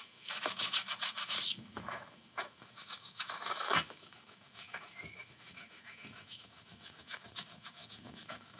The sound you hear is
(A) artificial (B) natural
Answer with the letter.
A